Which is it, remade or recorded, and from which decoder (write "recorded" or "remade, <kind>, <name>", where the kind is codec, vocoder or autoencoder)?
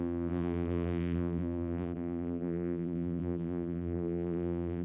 remade, vocoder, BigVGAN v2